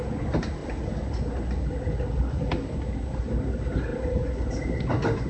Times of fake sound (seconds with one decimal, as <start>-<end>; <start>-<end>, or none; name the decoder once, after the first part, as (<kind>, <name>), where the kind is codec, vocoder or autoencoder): none